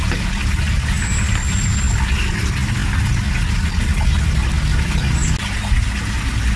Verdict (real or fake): real